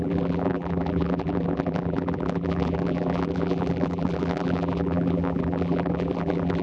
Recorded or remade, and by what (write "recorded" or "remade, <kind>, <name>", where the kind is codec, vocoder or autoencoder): remade, vocoder, BigVGAN v2